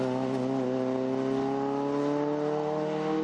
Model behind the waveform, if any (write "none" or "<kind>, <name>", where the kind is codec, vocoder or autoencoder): none